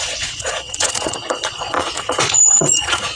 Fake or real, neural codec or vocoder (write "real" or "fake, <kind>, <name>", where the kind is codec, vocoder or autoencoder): fake, vocoder, Vocos